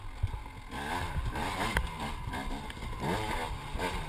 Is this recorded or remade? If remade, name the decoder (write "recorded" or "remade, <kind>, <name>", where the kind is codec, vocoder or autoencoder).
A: recorded